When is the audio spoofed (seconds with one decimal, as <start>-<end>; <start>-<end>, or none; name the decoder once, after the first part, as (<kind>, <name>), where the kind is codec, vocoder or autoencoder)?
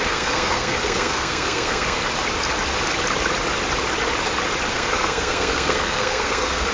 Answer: 0.0-2.0 (codec, SNAC); 4.7-6.7